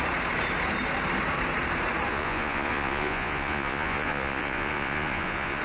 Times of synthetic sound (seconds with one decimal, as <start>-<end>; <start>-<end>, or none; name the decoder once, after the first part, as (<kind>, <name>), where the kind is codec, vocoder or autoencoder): 2.1-5.6 (vocoder, Vocos)

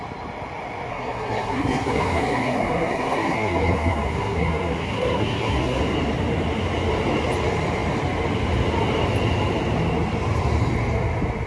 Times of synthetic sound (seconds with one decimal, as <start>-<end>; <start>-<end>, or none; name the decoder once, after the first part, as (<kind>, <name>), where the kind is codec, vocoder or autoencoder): 0.9-5.8 (codec, SNAC)

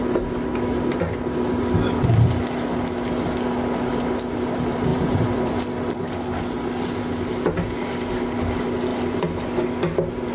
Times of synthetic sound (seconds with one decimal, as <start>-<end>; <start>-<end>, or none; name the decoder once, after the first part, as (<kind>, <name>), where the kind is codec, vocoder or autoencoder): 4.9-5.5 (vocoder, BigVGAN v2)

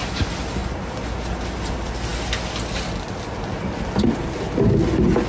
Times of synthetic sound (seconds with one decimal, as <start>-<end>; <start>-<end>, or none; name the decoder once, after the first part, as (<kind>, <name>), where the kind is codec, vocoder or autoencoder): none

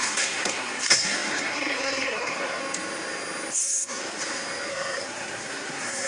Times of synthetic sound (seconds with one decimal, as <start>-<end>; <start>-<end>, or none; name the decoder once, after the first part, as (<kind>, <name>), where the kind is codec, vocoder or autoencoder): 0.0-2.6 (codec, SNAC); 3.5-4.2; 4.7-6.1

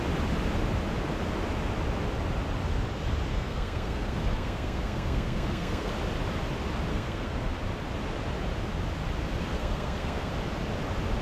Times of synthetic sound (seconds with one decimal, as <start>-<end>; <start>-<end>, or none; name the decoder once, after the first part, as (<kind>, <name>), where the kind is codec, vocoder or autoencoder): 3.3-5.9 (codec, SNAC); 6.9-7.5; 9.4-10.3

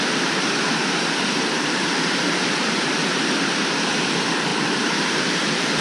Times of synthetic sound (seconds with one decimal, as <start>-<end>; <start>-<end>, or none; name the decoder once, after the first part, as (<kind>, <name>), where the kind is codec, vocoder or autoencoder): 0.0-5.8 (vocoder, BigVGAN v2)

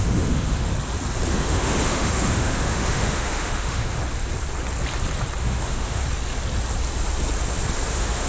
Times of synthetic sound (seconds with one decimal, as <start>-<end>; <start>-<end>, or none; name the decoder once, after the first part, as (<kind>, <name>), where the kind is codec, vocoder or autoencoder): 0.0-0.7 (autoencoder, DAC-VAE); 1.3-4.0; 5.4-6.0; 7.9-8.3